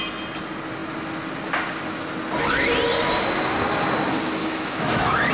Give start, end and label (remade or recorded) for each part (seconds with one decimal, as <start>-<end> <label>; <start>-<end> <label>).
0.0-4.4 recorded; 4.4-5.3 remade